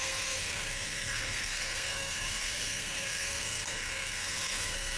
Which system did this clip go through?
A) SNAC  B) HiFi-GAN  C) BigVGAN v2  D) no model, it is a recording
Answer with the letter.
A